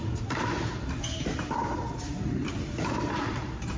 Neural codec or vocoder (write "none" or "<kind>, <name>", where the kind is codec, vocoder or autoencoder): vocoder, BigVGAN v2